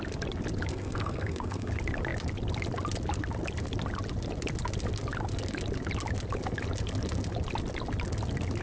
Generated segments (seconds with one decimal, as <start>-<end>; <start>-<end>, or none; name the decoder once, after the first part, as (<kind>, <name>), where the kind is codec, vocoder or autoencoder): 0.7-1.7 (codec, SNAC)